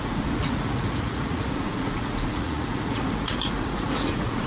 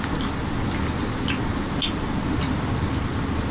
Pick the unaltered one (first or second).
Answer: second